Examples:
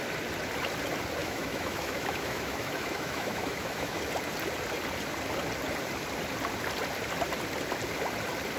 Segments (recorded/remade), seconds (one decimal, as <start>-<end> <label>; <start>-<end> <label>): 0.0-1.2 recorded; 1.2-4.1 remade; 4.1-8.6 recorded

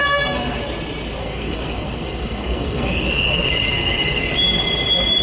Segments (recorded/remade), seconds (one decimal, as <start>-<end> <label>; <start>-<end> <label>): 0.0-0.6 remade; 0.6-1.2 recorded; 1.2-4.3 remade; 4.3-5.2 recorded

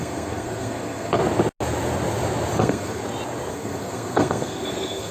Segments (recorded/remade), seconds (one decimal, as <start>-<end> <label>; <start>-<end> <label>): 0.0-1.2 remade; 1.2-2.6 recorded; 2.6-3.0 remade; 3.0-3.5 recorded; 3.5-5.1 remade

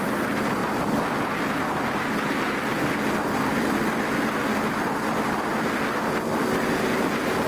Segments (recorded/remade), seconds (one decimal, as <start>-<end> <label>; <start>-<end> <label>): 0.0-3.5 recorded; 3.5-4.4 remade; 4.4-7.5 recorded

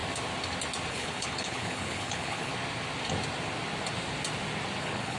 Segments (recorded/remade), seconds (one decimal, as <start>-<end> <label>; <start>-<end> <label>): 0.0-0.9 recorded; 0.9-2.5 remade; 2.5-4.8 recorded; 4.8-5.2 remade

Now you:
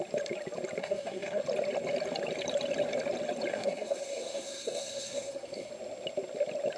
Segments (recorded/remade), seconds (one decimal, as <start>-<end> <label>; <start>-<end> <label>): 0.0-0.8 recorded; 0.8-1.4 remade; 1.4-3.5 recorded; 3.5-5.7 remade; 5.7-6.8 recorded